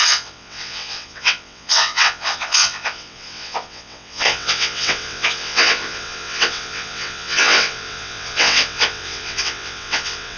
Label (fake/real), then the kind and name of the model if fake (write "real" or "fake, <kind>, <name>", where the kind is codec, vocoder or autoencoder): fake, vocoder, WaveNeXt